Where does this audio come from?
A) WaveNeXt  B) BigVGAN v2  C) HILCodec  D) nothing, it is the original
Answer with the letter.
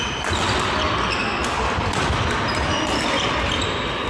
D